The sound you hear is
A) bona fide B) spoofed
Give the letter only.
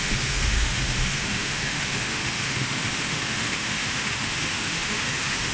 B